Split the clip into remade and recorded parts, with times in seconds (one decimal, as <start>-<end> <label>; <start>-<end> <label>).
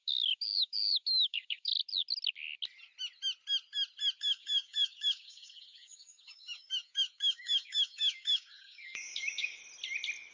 0.0-1.7 remade; 1.7-4.2 recorded; 4.2-9.6 remade; 9.6-10.3 recorded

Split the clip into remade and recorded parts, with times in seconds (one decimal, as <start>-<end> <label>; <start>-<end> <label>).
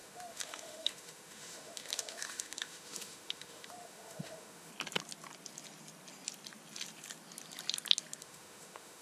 0.0-4.7 remade; 4.7-8.2 recorded; 8.2-9.0 remade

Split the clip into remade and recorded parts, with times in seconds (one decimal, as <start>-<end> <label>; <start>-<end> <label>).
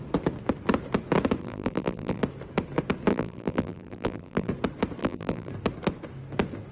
0.0-1.4 recorded; 1.4-2.2 remade; 2.2-3.1 recorded; 3.1-4.5 remade; 4.5-5.0 recorded; 5.0-5.5 remade; 5.5-6.7 recorded